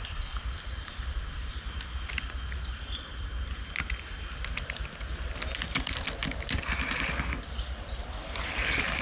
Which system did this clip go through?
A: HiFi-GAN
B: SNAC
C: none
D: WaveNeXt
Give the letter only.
C